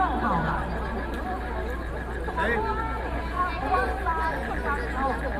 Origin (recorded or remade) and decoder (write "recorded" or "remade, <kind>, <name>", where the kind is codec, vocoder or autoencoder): recorded